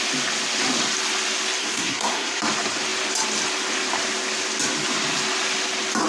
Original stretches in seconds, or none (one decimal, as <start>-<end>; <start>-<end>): 0.0-1.6; 2.4-6.1